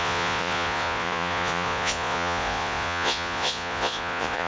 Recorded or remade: remade